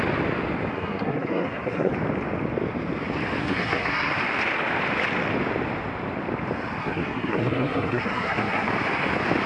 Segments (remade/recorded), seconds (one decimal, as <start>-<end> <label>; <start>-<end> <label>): 0.0-0.7 recorded; 0.7-1.9 remade; 1.9-3.4 recorded; 3.4-4.1 remade; 4.1-6.8 recorded; 6.8-8.7 remade; 8.7-9.5 recorded